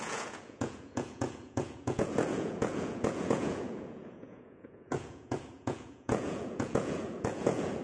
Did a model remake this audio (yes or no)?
yes